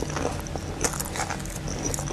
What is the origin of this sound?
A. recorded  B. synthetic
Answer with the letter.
A